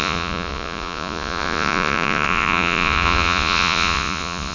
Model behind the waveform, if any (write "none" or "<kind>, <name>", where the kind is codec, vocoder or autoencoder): vocoder, Vocos